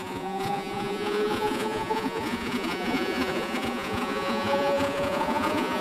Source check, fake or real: fake